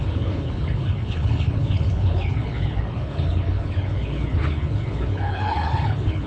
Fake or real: fake